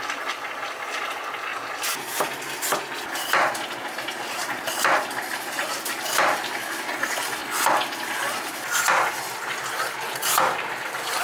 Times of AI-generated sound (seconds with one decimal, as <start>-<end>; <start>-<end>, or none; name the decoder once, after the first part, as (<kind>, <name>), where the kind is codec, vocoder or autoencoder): none

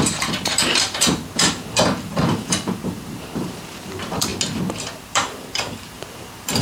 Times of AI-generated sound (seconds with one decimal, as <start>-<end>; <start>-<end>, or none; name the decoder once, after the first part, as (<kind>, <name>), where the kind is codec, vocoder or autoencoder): 0.0-4.3 (vocoder, BigVGAN v2); 4.9-6.6

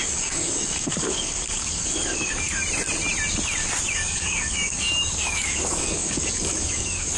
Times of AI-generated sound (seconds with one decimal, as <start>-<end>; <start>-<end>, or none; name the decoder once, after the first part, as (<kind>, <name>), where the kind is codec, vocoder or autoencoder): 0.0-2.6 (codec, DAC); 3.9-7.2

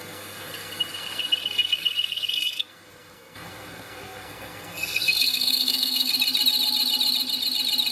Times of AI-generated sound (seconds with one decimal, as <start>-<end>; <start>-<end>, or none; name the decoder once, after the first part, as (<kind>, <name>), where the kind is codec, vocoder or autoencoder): 0.0-6.1 (codec, SNAC)

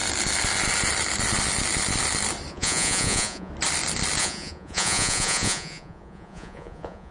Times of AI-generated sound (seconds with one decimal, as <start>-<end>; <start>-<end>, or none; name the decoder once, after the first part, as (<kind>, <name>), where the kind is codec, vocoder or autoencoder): 2.5-3.5 (vocoder, Vocos); 4.2-7.1

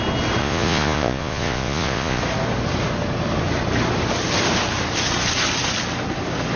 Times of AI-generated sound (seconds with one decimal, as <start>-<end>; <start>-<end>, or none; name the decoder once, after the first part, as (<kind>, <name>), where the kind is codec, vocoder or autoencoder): 0.4-2.2 (vocoder, Vocos)

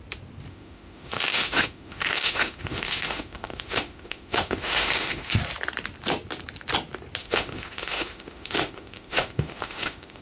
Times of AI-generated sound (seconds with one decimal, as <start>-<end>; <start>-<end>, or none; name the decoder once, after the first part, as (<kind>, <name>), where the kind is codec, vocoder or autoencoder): 0.5-5.3 (autoencoder, DAC-VAE); 7.2-10.2